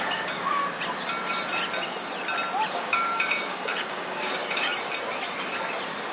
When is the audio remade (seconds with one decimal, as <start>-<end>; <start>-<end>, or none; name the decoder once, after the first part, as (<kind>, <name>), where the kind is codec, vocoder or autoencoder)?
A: 0.0-0.6 (codec, DAC); 2.7-4.7